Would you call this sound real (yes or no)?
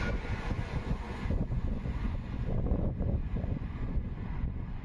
no